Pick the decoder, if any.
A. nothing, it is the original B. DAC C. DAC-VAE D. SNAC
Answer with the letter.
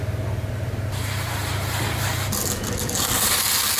A